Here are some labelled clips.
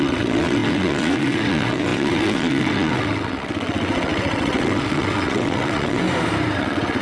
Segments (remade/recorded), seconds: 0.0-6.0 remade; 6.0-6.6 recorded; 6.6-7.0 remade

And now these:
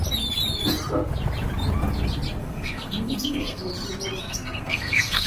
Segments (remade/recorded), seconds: 0.0-2.4 recorded; 2.4-3.7 remade; 3.7-4.2 recorded; 4.2-5.3 remade

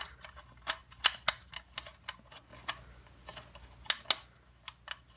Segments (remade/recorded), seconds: 0.0-5.2 recorded

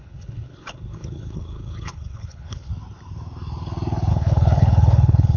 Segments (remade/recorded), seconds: 0.0-2.7 remade; 2.7-4.1 recorded; 4.1-5.4 remade